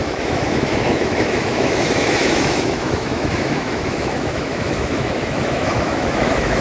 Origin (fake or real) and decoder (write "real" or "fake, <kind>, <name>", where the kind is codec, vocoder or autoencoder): fake, autoencoder, DAC-VAE